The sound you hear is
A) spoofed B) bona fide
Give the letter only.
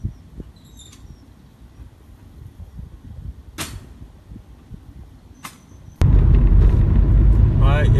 B